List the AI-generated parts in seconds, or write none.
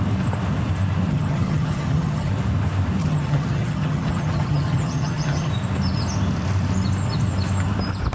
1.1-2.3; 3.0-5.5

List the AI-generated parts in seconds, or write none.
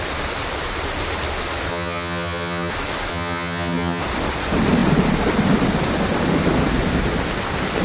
1.7-2.7; 3.1-4.0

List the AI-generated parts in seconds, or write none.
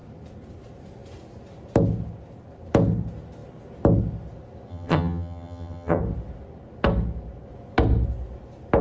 4.7-6.0